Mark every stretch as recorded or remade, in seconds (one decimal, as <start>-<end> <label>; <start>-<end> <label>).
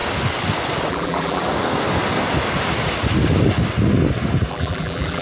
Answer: 0.0-0.9 recorded; 0.9-1.4 remade; 1.4-4.5 recorded; 4.5-5.2 remade